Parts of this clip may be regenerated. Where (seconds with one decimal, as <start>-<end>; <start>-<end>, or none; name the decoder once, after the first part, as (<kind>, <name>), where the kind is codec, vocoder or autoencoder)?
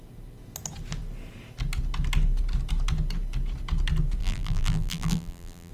4.2-5.7 (vocoder, BigVGAN v2)